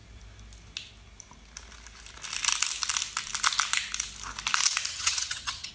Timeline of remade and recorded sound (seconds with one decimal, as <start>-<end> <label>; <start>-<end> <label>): 0.0-4.9 recorded; 4.9-5.7 remade